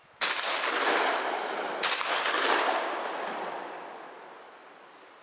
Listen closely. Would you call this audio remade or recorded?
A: recorded